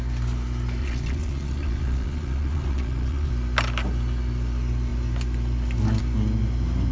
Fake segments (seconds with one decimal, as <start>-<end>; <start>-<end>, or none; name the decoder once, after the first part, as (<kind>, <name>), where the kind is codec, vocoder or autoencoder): 0.8-3.3 (vocoder, Vocos)